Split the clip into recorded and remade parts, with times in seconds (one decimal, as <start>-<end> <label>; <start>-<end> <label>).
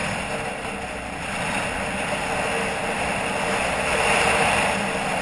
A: 0.0-5.2 recorded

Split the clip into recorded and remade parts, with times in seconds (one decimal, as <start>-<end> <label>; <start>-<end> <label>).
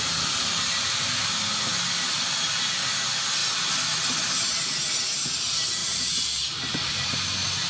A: 0.0-5.8 recorded; 5.8-6.9 remade; 6.9-7.7 recorded